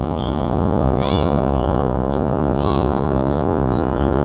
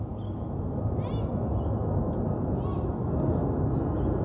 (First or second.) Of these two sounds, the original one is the second